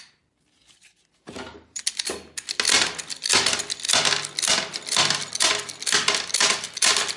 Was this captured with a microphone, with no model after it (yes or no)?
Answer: yes